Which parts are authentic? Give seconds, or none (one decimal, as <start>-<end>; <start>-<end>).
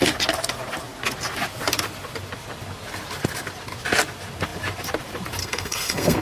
0.0-5.4